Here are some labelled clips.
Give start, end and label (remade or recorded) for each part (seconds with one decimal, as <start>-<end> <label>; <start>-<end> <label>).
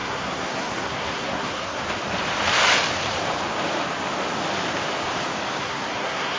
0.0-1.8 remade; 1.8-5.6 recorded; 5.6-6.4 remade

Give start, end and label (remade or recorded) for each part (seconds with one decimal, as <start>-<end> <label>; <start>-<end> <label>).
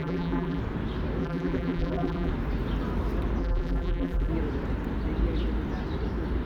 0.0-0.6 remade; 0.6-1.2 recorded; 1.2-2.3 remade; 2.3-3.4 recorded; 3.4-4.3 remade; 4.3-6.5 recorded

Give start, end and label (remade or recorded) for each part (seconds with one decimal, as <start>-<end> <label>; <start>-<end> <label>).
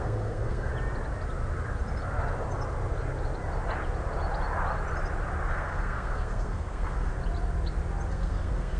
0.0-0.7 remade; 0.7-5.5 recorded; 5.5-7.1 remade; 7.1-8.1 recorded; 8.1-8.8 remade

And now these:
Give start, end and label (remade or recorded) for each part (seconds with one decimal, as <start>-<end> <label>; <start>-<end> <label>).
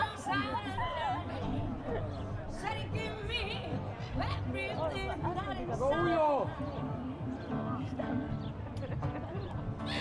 0.0-10.0 recorded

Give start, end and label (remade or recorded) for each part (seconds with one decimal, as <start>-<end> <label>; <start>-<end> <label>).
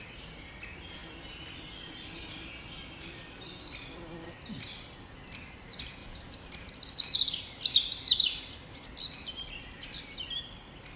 0.0-6.0 recorded; 6.0-6.7 remade; 6.7-11.0 recorded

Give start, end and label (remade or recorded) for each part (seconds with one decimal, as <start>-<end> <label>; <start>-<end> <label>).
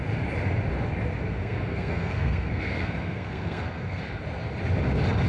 0.0-1.3 recorded; 1.3-4.0 remade; 4.0-5.3 recorded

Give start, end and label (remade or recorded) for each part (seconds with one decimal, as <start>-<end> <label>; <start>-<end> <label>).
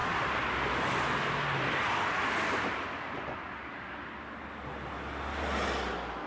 0.0-6.3 recorded